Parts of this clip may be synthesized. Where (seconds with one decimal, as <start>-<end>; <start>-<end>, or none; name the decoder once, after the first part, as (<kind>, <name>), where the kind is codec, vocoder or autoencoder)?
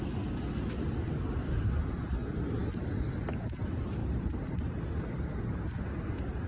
4.0-6.1 (vocoder, BigVGAN v2)